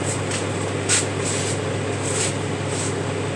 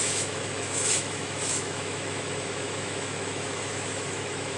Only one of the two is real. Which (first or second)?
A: first